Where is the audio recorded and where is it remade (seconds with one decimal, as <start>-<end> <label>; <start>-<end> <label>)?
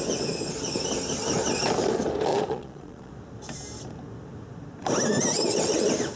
0.0-2.3 recorded; 2.3-3.1 remade; 3.1-6.2 recorded